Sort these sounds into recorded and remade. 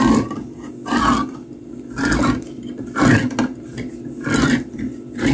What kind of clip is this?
recorded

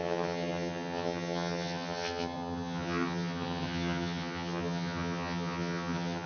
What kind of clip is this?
remade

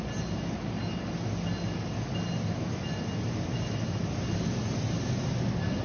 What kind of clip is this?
recorded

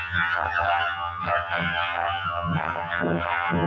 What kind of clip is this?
remade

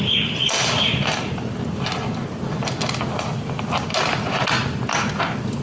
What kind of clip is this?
recorded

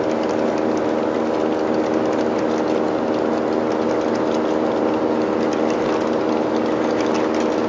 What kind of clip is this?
recorded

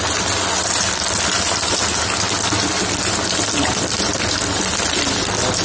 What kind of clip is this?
recorded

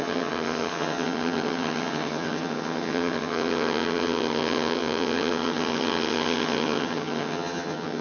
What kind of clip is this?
remade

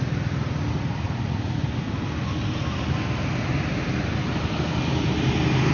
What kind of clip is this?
recorded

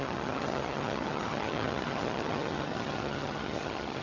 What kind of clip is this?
remade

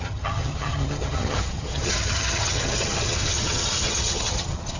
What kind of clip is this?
remade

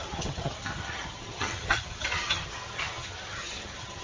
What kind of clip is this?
remade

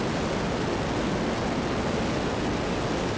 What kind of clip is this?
recorded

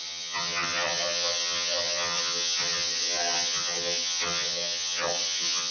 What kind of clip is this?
remade